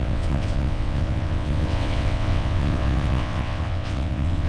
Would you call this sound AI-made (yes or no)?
yes